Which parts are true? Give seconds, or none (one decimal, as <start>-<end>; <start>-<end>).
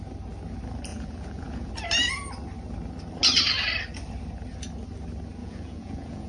0.0-0.9; 1.7-5.4